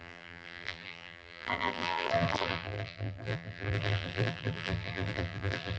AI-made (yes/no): yes